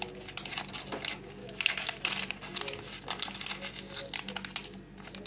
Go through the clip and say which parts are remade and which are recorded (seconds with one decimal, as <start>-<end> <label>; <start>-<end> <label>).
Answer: 0.0-1.4 recorded; 1.4-2.0 remade; 2.0-5.3 recorded